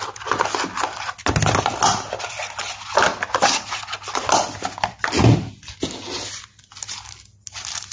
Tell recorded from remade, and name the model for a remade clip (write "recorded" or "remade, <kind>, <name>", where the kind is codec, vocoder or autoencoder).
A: recorded